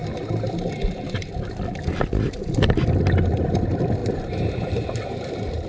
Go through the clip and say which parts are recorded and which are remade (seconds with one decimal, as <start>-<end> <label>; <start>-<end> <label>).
0.0-4.0 recorded; 4.0-5.7 remade